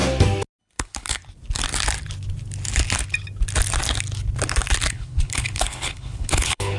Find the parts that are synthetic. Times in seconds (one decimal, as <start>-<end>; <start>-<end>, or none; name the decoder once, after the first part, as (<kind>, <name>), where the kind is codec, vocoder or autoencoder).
0.6-1.2 (codec, HILCodec); 4.9-6.8

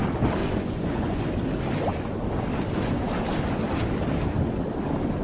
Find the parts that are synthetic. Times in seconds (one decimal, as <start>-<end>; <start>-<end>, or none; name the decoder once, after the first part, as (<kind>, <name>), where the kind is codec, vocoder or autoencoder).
0.4-1.3 (vocoder, Vocos)

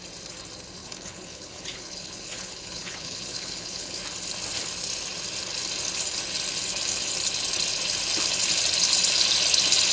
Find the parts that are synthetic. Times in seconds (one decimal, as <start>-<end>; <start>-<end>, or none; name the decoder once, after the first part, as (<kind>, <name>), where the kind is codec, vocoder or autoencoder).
0.8-4.0 (codec, HILCodec)

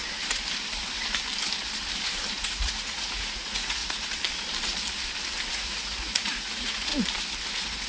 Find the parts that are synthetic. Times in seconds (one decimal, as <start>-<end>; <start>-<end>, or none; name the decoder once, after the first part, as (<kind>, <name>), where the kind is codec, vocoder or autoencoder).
2.3-3.8 (vocoder, Vocos); 5.5-6.9; 7.5-7.9

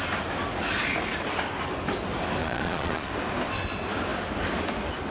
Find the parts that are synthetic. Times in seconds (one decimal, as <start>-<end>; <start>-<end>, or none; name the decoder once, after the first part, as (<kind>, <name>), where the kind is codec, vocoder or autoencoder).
2.4-3.1 (vocoder, Vocos)

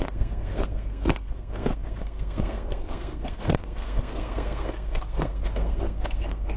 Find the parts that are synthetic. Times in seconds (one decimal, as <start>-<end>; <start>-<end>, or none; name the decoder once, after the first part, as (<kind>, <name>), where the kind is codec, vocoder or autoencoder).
0.0-6.6 (codec, SNAC)

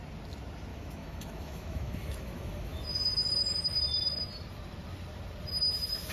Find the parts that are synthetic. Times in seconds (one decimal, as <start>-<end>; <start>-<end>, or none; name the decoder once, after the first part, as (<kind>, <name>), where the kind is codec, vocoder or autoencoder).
0.7-2.8 (autoencoder, DAC-VAE)